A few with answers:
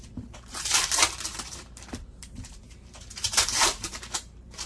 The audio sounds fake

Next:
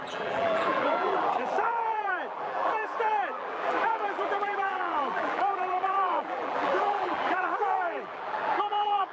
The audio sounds fake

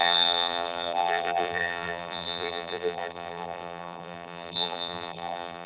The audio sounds fake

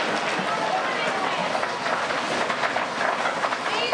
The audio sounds real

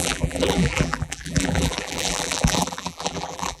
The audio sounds fake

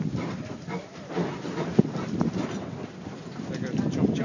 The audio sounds fake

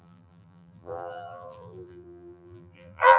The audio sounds fake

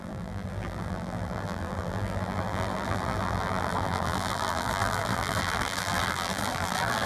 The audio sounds fake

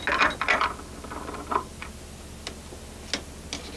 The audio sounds real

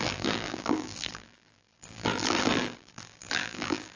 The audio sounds fake